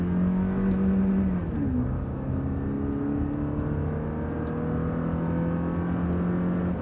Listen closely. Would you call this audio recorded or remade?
recorded